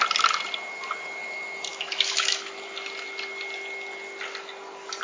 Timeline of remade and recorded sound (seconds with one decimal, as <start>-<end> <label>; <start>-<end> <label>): 0.0-1.7 recorded; 1.7-2.3 remade; 2.3-5.0 recorded

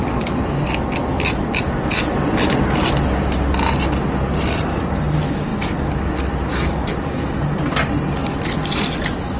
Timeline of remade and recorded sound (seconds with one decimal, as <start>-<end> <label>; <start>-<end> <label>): 0.0-9.4 recorded